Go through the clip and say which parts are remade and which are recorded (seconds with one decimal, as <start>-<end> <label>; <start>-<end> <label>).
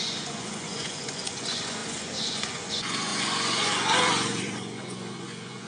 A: 0.0-5.7 remade